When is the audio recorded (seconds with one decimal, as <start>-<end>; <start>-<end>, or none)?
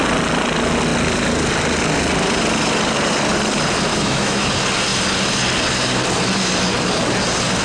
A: 0.0-3.9; 4.5-7.6